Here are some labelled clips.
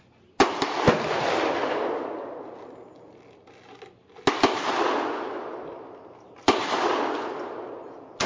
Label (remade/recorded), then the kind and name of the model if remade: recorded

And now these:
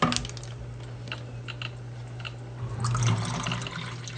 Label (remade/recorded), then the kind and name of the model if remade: recorded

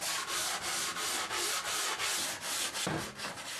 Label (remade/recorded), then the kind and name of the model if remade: recorded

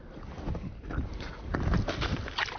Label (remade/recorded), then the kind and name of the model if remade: recorded